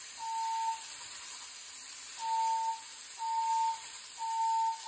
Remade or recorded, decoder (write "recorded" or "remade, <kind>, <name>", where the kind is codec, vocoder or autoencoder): recorded